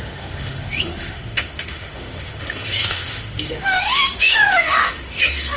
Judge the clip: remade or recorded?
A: remade